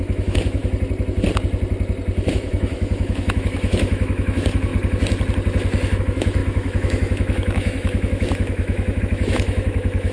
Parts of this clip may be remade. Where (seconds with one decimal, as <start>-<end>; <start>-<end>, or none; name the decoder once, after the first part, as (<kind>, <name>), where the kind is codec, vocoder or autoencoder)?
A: 0.0-0.6 (autoencoder, DAC-VAE); 2.3-4.7; 6.0-10.1